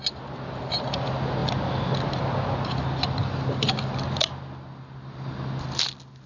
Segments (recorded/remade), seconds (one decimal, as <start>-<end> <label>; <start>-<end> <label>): 0.0-6.3 recorded